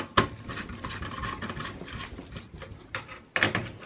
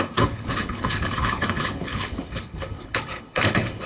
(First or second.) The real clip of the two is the first